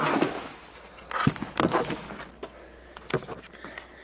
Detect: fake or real real